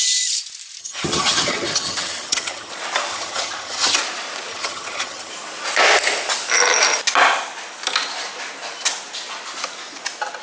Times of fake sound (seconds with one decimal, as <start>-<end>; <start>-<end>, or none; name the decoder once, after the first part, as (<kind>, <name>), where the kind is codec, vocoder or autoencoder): 0.8-2.7 (vocoder, HiFi-GAN); 3.1-4.0; 4.5-5.3